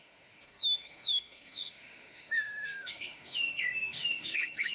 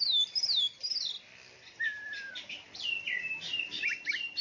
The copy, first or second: first